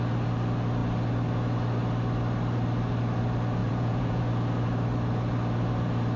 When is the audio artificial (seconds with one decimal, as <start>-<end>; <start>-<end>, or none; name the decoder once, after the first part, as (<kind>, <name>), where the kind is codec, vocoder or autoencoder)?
3.6-4.2 (vocoder, Vocos)